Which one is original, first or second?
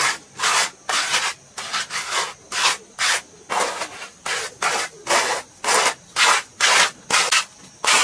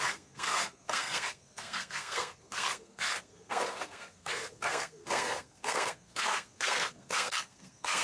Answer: first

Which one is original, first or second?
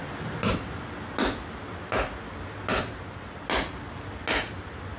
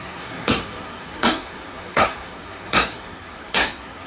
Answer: first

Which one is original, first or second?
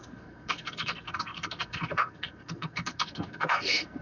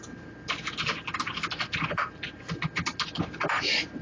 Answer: second